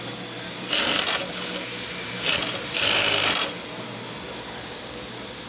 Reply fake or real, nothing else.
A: real